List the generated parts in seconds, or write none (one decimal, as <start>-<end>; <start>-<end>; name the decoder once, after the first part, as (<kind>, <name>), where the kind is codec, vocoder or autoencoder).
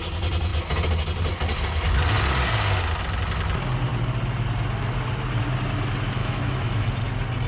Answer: 6.2-6.9 (autoencoder, DAC-VAE)